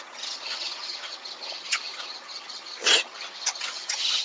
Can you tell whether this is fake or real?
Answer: fake